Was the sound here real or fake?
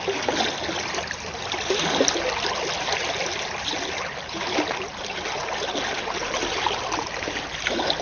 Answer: real